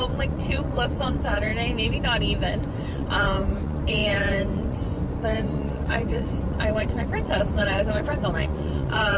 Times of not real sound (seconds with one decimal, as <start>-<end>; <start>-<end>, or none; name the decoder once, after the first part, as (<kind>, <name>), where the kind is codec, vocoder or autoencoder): 0.0-1.5 (vocoder, Vocos); 2.6-9.2